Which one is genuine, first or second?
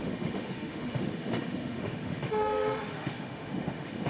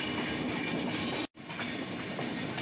second